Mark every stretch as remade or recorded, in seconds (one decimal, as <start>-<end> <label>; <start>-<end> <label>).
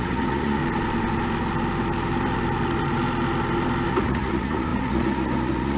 0.0-0.6 remade; 0.6-3.9 recorded; 3.9-5.8 remade